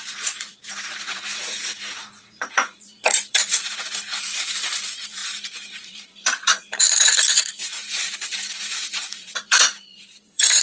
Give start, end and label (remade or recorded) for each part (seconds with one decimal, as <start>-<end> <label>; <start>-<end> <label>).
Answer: 0.0-10.6 remade